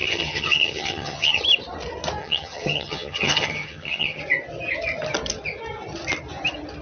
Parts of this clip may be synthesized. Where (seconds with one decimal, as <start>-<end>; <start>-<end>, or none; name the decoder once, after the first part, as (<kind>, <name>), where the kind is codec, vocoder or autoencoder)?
0.0-1.4 (vocoder, HiFi-GAN); 2.2-4.2